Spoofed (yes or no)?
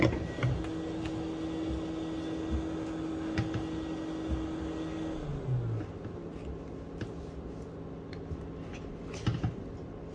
no